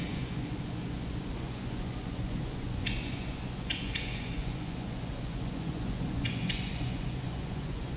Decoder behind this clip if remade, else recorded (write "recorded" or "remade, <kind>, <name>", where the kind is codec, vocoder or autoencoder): remade, vocoder, Vocos